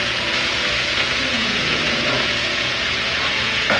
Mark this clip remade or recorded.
remade